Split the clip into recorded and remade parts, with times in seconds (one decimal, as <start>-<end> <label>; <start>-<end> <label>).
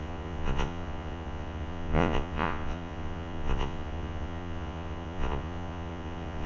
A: 0.0-6.5 remade